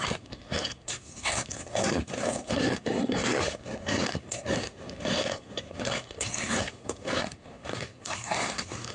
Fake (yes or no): yes